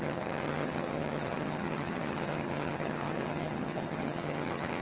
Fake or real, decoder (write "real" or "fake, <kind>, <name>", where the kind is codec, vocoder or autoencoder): fake, vocoder, HiFi-GAN